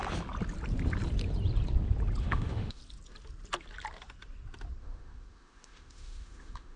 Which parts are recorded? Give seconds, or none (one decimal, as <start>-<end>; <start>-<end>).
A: 0.0-2.2; 2.8-4.8

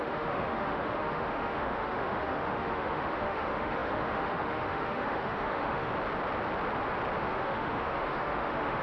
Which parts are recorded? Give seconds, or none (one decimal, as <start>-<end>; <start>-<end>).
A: 5.9-7.2

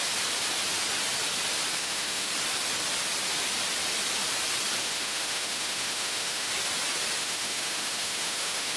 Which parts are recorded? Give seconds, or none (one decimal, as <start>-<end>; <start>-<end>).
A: 0.0-1.8; 2.3-4.8; 6.5-7.2

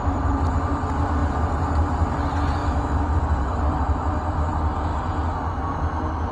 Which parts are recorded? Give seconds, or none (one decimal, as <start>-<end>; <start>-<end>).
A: 0.0-2.6; 3.2-6.3

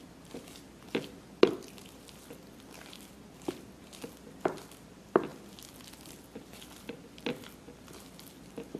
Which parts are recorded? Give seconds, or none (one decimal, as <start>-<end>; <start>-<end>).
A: 0.0-8.8

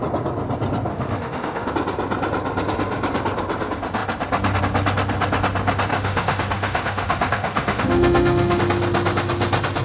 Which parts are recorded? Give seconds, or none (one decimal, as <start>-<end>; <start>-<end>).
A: 0.0-0.9; 1.7-5.9; 8.6-9.8